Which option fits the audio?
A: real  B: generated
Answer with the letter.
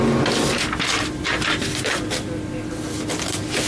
A